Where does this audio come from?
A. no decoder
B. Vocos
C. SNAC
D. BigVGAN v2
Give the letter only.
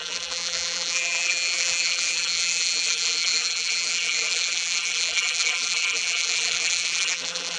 D